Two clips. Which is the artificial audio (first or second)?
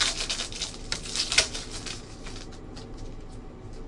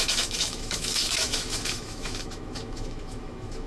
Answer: second